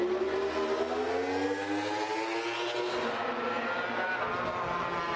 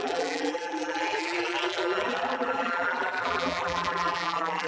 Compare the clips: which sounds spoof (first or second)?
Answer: second